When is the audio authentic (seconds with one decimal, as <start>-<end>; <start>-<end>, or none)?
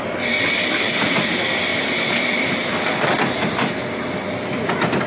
0.0-5.1